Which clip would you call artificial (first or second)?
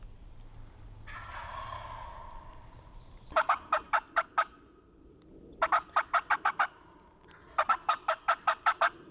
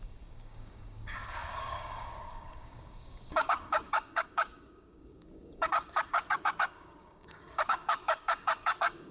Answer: second